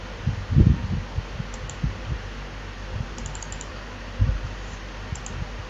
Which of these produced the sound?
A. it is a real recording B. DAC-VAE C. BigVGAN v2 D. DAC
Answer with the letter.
A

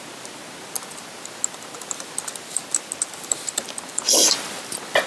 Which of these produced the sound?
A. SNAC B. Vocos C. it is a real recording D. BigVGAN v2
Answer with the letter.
C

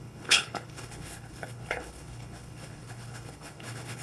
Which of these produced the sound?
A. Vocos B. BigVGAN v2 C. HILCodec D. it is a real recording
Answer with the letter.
C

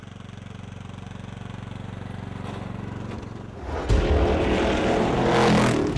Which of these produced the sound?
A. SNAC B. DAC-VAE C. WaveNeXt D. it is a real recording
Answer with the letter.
D